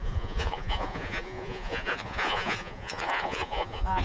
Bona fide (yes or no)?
no